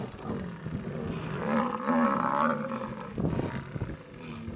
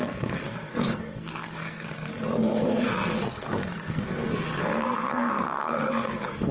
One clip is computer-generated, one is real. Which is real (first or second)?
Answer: first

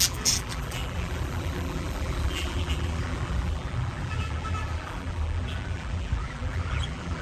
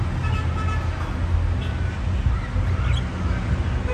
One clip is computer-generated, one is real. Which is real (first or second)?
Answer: second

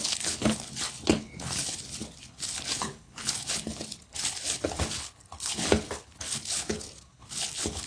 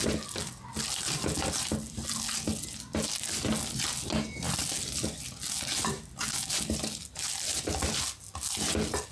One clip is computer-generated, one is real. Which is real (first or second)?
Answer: second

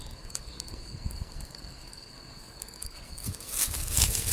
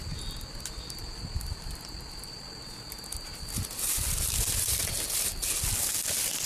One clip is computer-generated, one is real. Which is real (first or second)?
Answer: second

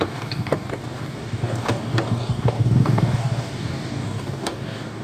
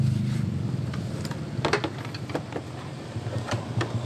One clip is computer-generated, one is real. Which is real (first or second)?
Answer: second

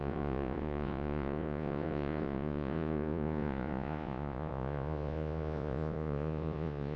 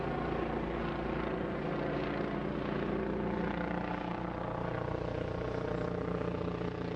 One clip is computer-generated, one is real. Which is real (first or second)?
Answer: second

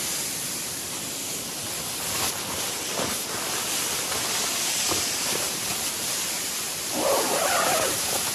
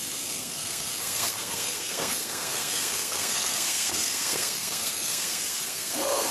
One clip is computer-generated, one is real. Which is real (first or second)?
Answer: first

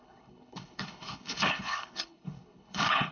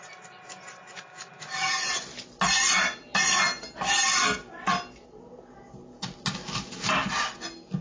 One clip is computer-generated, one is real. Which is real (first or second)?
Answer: second